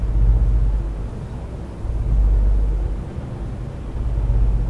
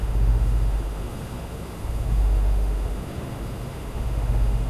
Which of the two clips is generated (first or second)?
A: second